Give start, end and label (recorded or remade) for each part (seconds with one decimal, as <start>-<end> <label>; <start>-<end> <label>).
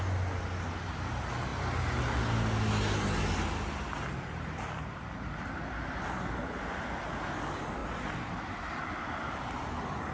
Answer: 0.0-10.1 recorded